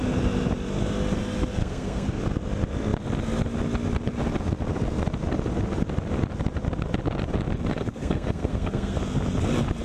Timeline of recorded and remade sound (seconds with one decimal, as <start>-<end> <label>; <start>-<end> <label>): 0.0-1.6 recorded; 1.6-2.2 remade; 2.2-7.7 recorded; 7.7-9.0 remade; 9.0-9.8 recorded

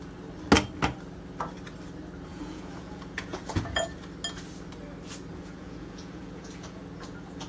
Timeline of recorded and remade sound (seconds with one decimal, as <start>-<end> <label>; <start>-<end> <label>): 0.0-2.3 recorded; 2.3-3.6 remade; 3.6-5.3 recorded; 5.3-6.8 remade; 6.8-7.5 recorded

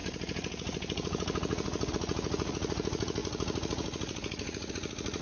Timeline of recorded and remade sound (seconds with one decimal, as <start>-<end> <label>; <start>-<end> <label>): 0.0-5.2 remade